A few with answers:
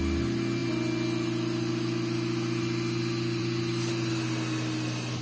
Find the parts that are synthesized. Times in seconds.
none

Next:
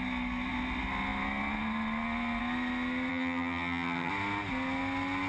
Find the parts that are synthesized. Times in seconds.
3.1-4.1 (vocoder, HiFi-GAN)